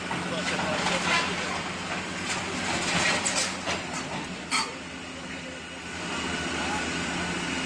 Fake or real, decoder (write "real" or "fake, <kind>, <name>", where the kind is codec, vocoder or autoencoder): real